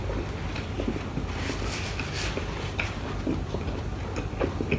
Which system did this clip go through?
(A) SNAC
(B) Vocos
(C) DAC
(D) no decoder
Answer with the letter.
D